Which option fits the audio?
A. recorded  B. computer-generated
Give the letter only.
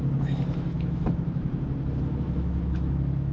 B